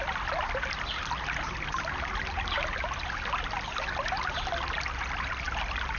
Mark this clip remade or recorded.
recorded